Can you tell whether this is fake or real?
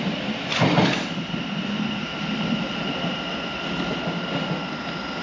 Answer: real